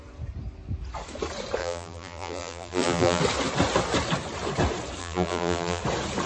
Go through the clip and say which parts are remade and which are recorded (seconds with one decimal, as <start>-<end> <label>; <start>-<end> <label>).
0.0-1.6 recorded; 1.6-3.2 remade; 3.2-5.0 recorded; 5.0-5.8 remade; 5.8-6.3 recorded